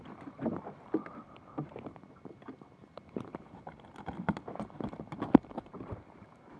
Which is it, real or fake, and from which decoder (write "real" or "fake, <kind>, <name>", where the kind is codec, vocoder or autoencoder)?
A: fake, vocoder, BigVGAN v2